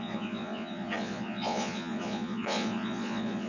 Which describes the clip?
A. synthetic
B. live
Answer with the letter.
A